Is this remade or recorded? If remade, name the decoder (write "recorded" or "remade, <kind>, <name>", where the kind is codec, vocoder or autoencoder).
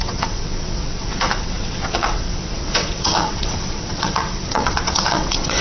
remade, vocoder, WaveNeXt